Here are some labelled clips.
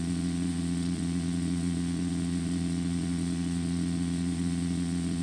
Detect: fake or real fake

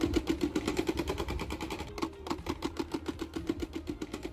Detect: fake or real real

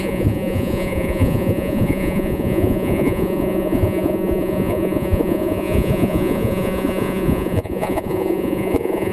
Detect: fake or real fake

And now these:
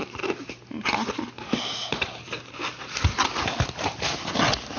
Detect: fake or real real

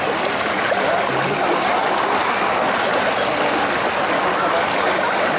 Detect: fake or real real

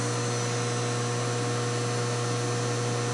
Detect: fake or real real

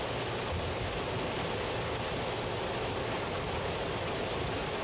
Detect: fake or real real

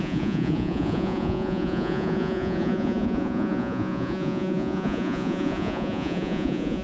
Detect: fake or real fake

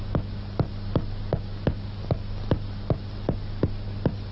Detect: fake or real real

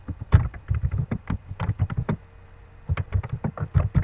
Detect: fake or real real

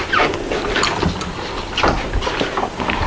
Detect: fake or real real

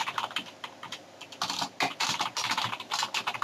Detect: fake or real real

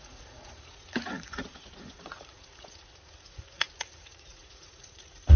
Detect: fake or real fake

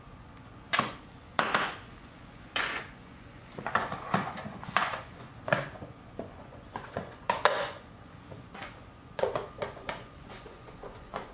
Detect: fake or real fake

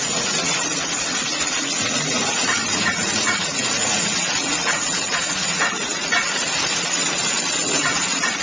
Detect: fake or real fake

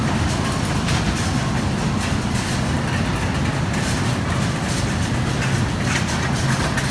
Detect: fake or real real